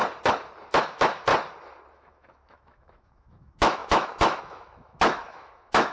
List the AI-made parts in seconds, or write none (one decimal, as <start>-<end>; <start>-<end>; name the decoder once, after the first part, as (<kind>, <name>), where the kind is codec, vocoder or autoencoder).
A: 0.7-1.3 (autoencoder, DAC-VAE); 1.9-5.9